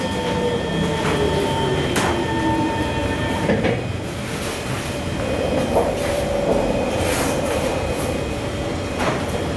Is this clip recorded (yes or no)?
no